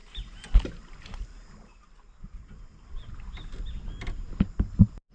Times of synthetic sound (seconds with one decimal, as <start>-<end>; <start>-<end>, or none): none